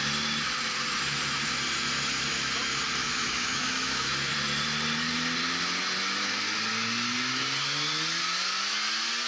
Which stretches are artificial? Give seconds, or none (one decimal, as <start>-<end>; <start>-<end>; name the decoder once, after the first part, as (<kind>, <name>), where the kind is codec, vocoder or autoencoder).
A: 3.0-4.1 (autoencoder, DAC-VAE)